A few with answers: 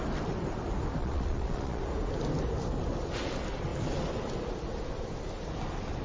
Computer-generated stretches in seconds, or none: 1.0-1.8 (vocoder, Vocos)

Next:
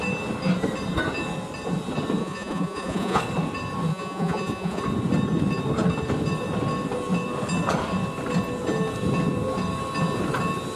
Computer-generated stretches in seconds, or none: 2.2-3.2 (vocoder, Vocos); 3.9-4.8

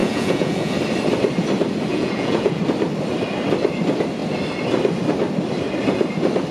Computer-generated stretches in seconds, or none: 0.0-0.7 (vocoder, Vocos); 1.9-2.6

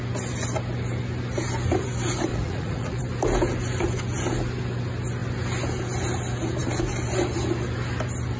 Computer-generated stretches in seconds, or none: 2.3-3.0 (vocoder, Vocos)